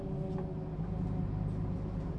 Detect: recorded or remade recorded